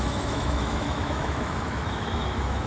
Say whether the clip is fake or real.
fake